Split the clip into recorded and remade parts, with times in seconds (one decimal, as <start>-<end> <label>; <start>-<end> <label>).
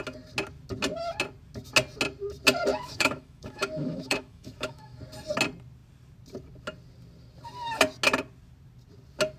0.0-2.7 recorded; 2.7-5.0 remade; 5.0-9.4 recorded